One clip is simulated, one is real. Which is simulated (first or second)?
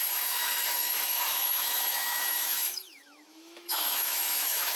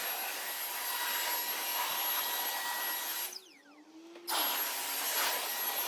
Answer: first